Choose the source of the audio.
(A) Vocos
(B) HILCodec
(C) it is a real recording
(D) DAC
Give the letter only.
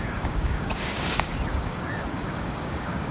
D